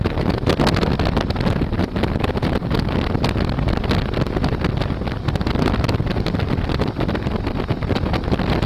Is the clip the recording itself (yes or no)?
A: yes